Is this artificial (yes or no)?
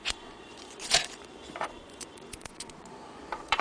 yes